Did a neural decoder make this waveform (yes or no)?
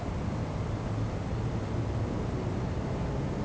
no